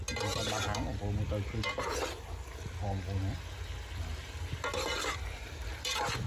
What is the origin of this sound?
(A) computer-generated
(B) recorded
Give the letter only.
B